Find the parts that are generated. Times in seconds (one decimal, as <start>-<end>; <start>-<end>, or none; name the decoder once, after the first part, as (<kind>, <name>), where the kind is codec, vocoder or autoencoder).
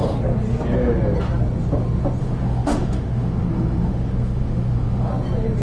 2.2-5.1 (autoencoder, DAC-VAE)